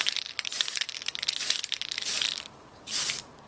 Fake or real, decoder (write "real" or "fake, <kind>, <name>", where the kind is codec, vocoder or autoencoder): fake, vocoder, BigVGAN v2